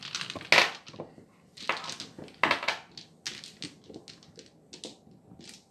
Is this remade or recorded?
recorded